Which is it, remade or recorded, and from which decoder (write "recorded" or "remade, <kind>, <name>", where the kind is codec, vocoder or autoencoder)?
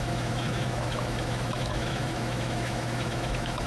remade, autoencoder, DAC-VAE